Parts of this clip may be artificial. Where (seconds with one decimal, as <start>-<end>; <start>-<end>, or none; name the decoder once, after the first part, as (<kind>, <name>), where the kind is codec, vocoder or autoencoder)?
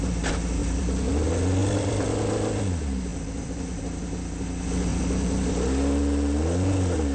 0.6-1.1 (vocoder, BigVGAN v2); 1.6-2.1; 3.1-3.8; 4.9-5.5